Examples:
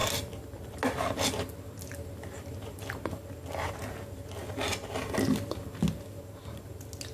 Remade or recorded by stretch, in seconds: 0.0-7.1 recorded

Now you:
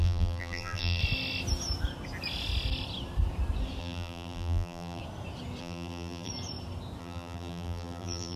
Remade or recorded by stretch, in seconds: 0.0-1.0 remade; 1.0-3.8 recorded; 3.8-5.0 remade; 5.0-5.6 recorded; 5.6-6.3 remade; 6.3-7.0 recorded; 7.0-8.4 remade